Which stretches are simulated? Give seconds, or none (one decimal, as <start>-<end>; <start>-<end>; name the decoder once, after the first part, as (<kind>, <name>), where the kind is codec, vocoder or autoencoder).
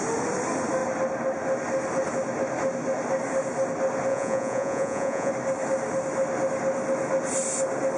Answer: 4.1-5.3 (vocoder, Vocos)